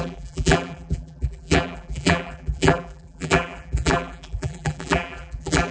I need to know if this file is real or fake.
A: fake